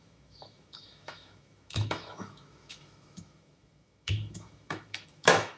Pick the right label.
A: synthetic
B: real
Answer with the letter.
A